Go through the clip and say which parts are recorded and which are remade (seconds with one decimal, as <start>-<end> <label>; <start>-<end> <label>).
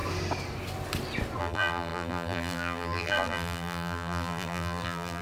0.0-1.4 recorded; 1.4-5.2 remade